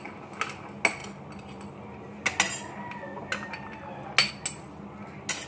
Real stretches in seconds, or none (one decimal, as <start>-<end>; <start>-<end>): 0.0-5.5